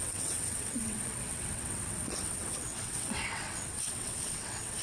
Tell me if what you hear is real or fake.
fake